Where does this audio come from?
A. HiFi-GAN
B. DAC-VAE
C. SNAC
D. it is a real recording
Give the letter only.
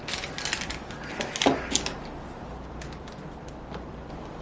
D